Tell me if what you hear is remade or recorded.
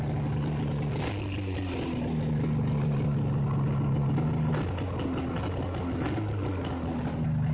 recorded